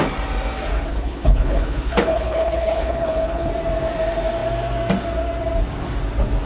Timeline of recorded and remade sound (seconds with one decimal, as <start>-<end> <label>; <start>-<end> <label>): 0.0-0.9 recorded; 0.9-3.5 remade; 3.5-6.5 recorded